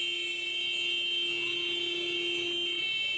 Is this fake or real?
real